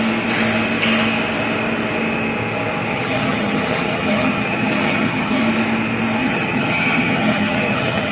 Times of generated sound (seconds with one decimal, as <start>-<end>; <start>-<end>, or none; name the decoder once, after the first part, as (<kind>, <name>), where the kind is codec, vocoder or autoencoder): 2.9-5.4 (vocoder, HiFi-GAN); 6.2-8.1